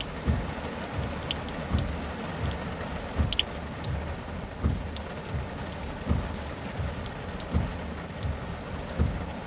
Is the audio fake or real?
real